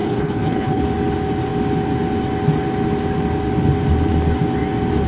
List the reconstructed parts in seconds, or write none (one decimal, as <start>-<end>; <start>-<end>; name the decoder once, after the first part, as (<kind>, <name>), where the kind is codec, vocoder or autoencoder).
0.0-0.8 (codec, HILCodec)